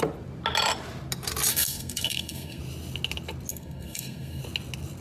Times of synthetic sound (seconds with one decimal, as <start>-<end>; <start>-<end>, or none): 1.5-2.6; 3.5-4.4